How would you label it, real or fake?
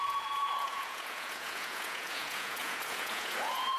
fake